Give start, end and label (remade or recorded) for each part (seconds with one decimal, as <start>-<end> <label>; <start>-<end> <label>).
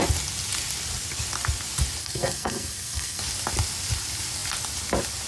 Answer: 0.0-2.0 recorded; 2.0-3.2 remade; 3.2-5.3 recorded